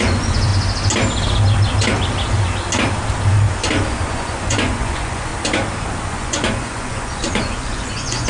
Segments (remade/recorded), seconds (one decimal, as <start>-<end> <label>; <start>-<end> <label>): 0.0-0.5 remade; 0.5-3.9 recorded; 3.9-5.3 remade; 5.3-6.1 recorded; 6.1-8.3 remade